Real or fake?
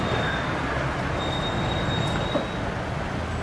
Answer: real